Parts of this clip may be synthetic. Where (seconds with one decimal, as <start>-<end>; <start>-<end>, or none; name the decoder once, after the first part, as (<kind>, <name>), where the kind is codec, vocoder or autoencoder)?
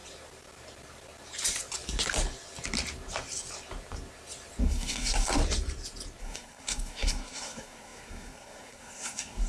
4.6-5.4 (codec, SNAC); 6.2-9.5